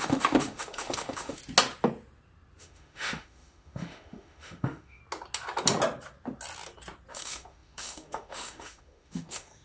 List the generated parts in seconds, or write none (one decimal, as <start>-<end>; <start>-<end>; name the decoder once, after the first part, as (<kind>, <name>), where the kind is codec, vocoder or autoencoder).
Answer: 0.0-1.4 (autoencoder, DAC-VAE); 2.6-5.0; 7.1-9.6